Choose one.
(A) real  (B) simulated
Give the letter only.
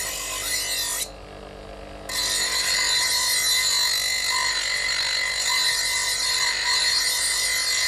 A